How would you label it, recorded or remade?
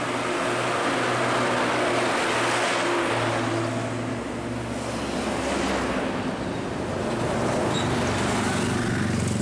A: recorded